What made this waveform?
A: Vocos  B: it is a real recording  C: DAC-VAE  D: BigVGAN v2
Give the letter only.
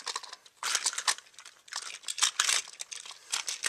B